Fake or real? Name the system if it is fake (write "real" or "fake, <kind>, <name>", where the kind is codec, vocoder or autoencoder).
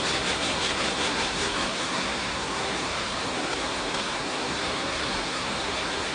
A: fake, codec, SNAC